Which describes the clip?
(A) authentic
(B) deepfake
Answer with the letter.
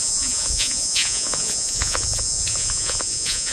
B